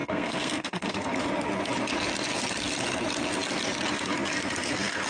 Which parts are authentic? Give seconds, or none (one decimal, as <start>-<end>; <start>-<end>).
1.1-5.1